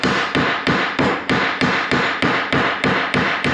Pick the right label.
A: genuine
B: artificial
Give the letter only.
A